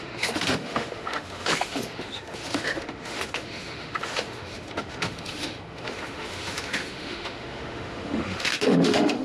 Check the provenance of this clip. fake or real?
fake